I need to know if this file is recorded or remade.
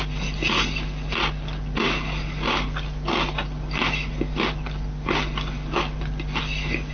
recorded